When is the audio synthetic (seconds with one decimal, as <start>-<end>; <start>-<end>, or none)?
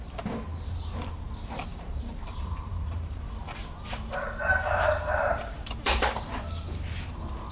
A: 1.7-6.2